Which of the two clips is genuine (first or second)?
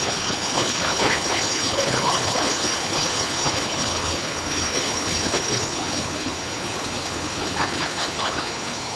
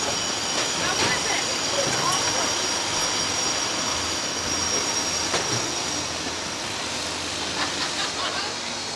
second